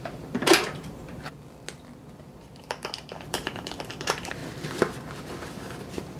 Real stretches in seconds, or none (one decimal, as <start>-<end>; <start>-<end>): 1.3-2.3; 4.4-5.8